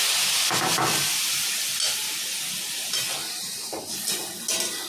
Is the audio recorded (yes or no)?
yes